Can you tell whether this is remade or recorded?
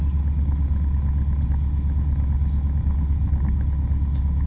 recorded